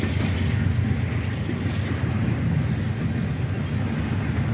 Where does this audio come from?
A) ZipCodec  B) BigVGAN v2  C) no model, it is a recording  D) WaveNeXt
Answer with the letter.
C